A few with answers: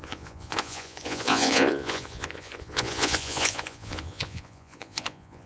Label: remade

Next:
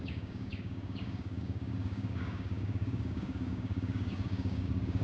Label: remade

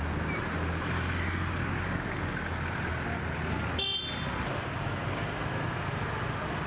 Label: recorded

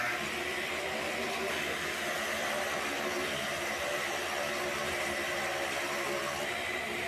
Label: recorded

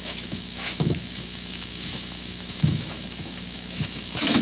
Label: remade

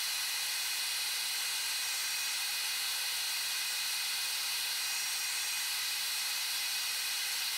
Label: recorded